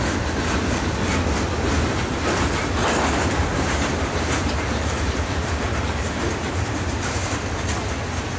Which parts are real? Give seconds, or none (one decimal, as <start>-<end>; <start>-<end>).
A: 0.0-2.8; 7.5-8.4